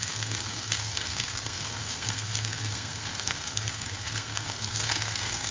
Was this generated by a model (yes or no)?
yes